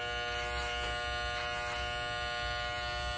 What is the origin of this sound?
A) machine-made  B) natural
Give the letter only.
B